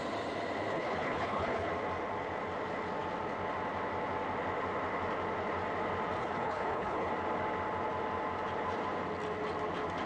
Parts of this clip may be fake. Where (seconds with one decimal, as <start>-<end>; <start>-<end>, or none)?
0.7-1.7; 6.2-7.1